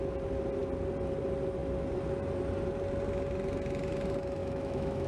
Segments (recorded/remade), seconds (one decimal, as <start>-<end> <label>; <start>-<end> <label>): 0.0-4.4 recorded; 4.4-5.1 remade